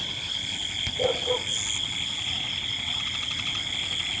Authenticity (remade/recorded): recorded